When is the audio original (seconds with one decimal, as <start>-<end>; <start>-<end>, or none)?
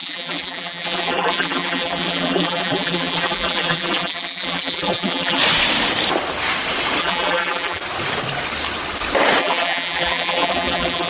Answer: 5.4-7.0; 7.8-9.4